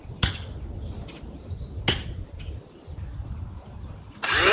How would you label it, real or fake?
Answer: real